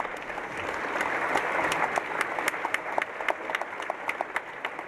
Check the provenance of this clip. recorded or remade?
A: recorded